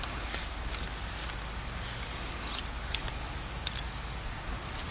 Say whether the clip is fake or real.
real